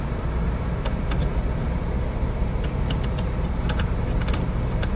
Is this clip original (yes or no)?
yes